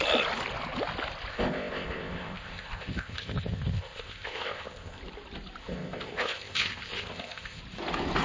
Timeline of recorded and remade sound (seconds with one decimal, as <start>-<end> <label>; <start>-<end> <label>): 0.0-1.3 recorded; 1.3-5.0 remade; 5.0-5.6 recorded; 5.6-7.6 remade; 7.6-8.2 recorded